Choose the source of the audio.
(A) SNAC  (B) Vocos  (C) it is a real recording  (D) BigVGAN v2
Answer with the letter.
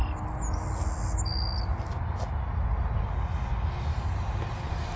C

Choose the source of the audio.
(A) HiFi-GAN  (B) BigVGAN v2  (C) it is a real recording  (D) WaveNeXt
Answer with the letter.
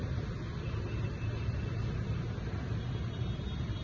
C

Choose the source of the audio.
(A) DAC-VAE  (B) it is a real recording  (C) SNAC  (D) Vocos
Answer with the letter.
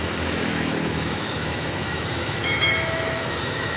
A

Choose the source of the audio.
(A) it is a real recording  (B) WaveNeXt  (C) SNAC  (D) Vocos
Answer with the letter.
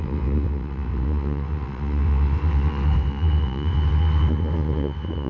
B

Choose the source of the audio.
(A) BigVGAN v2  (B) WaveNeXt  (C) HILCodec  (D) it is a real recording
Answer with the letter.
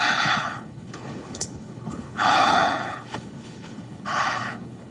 C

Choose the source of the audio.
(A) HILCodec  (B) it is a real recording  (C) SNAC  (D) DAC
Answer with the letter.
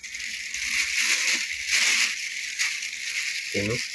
B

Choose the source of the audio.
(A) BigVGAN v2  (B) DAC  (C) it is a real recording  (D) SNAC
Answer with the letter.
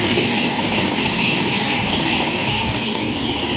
B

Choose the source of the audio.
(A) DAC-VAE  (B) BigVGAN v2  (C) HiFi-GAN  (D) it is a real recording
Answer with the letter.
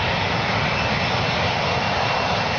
D